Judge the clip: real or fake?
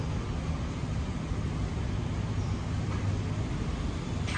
real